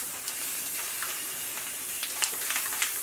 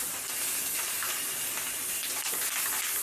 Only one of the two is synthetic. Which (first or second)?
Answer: first